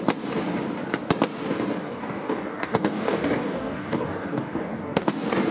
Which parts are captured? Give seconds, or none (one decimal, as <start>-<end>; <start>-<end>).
0.0-1.8; 5.1-5.5